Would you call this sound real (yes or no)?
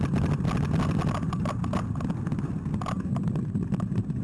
yes